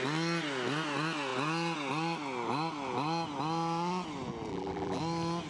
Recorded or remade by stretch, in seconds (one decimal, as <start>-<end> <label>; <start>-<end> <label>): 0.0-4.5 recorded; 4.5-5.0 remade; 5.0-5.5 recorded